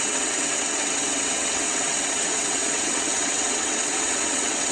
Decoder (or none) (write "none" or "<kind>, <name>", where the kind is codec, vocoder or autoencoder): vocoder, WaveNeXt